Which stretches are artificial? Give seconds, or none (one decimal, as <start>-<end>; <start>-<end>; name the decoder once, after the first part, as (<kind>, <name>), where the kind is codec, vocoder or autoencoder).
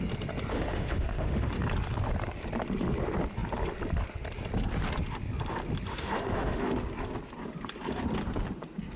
0.5-1.5 (autoencoder, DAC-VAE); 5.9-6.7